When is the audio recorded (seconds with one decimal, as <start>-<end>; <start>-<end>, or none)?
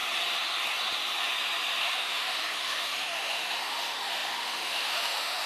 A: 0.0-1.8